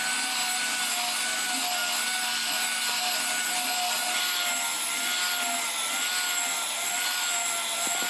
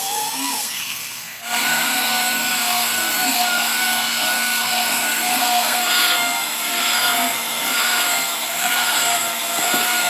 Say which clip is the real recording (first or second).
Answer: first